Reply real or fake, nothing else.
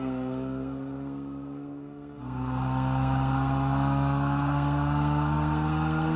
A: fake